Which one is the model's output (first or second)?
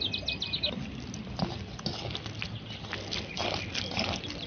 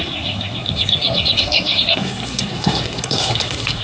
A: second